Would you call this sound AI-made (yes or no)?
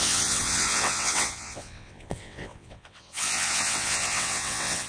yes